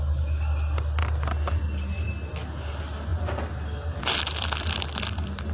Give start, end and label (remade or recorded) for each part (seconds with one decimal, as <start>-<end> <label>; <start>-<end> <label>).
0.0-5.5 recorded